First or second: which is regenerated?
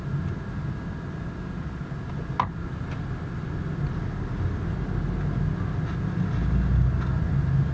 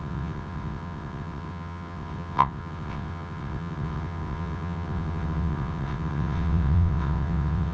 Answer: second